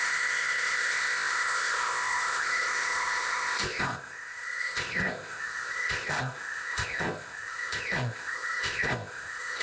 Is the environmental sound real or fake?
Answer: fake